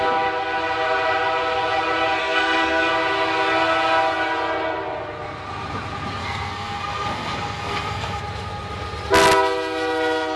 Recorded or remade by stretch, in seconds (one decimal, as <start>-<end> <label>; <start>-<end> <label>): 0.0-2.2 recorded; 2.2-2.9 remade; 2.9-6.2 recorded; 6.2-8.2 remade; 8.2-10.4 recorded